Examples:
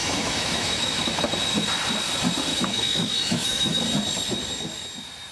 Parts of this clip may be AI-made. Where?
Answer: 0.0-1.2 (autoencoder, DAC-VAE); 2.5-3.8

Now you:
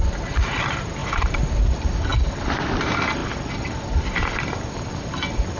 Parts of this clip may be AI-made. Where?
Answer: 1.0-1.6 (vocoder, BigVGAN v2)

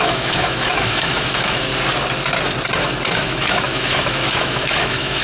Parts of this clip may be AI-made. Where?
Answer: 0.0-1.7 (autoencoder, DAC-VAE); 2.8-5.2